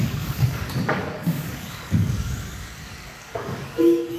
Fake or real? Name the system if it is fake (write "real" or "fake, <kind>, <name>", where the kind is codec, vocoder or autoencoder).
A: fake, codec, DAC